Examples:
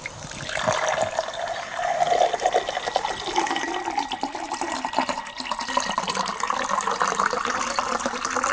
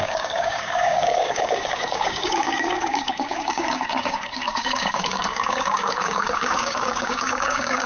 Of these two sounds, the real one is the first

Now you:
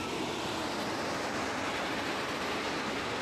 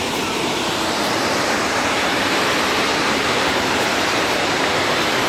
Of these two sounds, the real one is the first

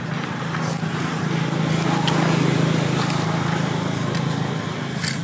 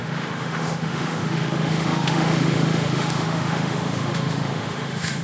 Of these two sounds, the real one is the first